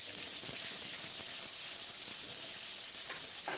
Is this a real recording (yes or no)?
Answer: yes